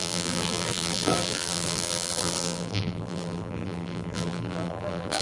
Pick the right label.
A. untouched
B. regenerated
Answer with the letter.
B